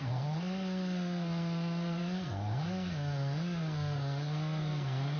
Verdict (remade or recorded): remade